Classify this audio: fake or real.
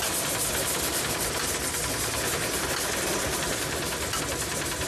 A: real